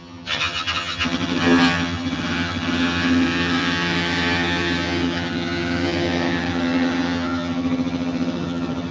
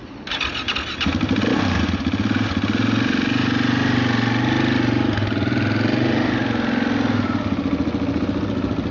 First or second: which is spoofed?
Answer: first